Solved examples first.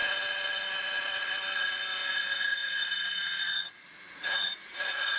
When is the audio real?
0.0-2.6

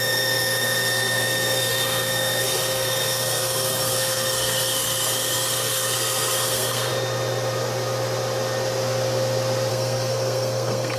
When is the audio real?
6.9-9.7

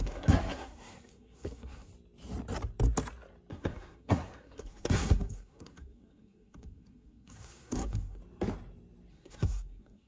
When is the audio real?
1.9-3.5; 8.2-9.1

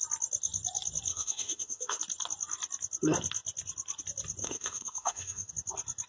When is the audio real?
0.0-1.1; 2.0-4.4; 5.5-6.1

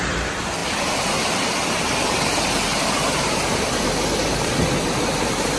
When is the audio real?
0.0-0.6; 1.5-2.7

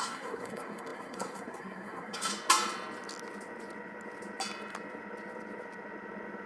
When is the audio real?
2.3-6.5